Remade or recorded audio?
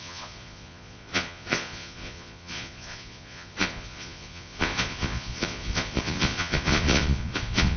remade